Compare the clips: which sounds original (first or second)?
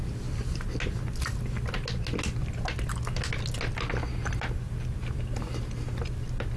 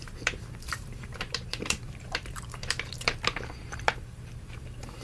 first